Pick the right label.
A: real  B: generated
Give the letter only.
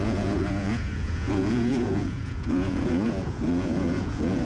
B